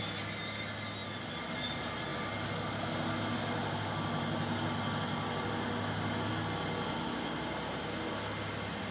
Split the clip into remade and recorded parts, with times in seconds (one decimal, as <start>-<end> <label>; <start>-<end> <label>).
0.0-8.9 recorded